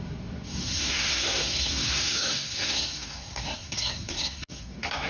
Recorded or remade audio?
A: remade